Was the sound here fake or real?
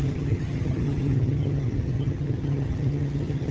fake